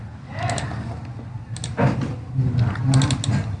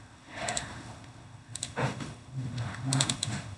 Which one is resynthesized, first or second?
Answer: second